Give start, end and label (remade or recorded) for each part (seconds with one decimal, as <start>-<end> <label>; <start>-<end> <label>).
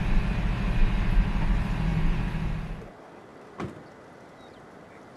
0.0-5.2 recorded